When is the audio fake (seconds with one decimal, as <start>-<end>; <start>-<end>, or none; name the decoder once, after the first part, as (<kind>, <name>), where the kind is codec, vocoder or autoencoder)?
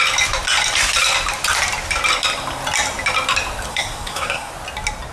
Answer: 3.7-4.5 (codec, SNAC)